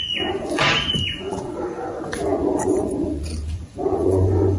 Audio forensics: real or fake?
fake